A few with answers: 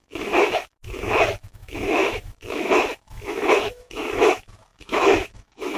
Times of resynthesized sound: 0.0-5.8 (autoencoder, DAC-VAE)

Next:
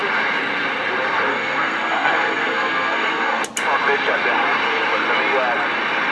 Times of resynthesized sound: 1.3-3.4 (codec, SNAC)